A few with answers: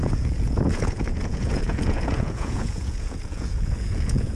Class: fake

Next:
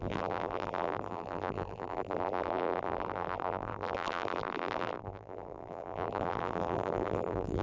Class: fake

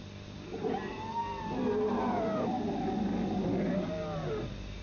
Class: real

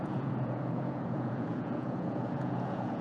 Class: fake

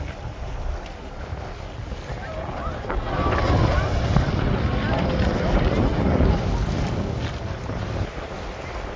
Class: real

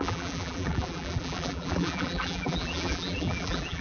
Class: fake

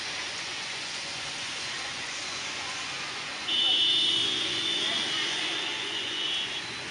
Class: fake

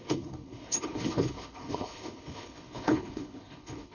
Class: fake